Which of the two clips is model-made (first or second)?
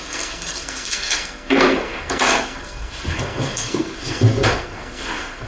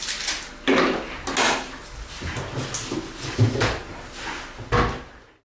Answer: first